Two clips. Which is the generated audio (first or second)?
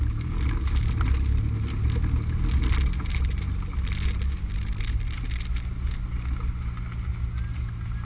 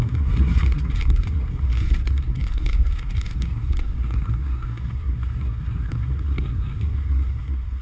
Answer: second